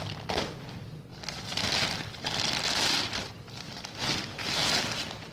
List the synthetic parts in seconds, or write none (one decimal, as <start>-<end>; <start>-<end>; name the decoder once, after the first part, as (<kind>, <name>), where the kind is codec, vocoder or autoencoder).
none